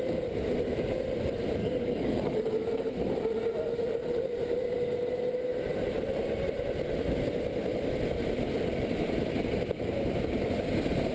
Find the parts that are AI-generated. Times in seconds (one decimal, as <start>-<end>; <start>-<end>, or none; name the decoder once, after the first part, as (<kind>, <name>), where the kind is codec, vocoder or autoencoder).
1.6-2.5 (codec, DAC)